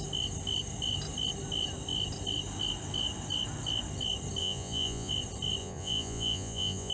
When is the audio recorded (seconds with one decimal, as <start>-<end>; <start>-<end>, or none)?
0.0-4.4; 5.1-5.6